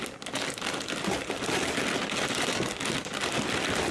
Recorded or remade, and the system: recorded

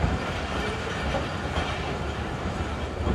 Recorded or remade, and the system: remade, vocoder, BigVGAN v2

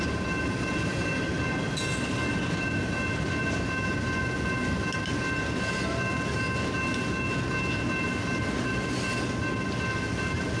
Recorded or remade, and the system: recorded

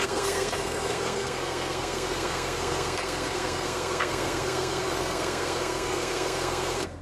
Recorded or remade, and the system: remade, codec, SNAC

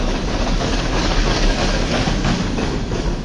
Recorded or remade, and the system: remade, codec, DAC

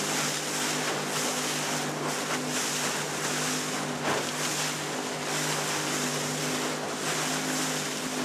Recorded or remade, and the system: recorded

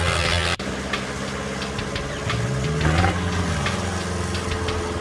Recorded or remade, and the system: recorded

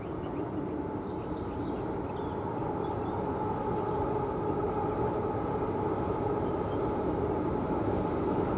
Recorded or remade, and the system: recorded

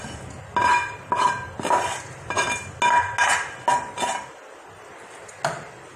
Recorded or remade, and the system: recorded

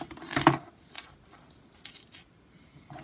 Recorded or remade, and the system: recorded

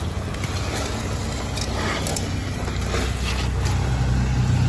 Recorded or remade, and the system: recorded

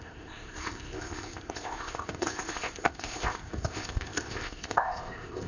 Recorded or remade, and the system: remade, codec, ZipCodec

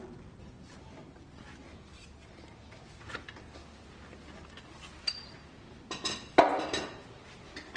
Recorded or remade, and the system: recorded